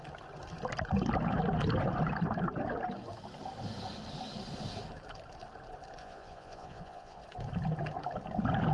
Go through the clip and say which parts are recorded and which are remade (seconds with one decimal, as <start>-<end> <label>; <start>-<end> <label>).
0.0-6.0 recorded; 6.0-7.2 remade; 7.2-8.7 recorded